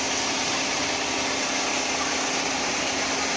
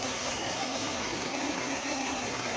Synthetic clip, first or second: second